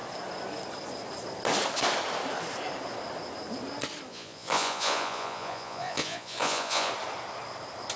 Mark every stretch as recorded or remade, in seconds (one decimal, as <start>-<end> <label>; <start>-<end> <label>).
0.0-4.1 recorded; 4.1-6.9 remade; 6.9-8.0 recorded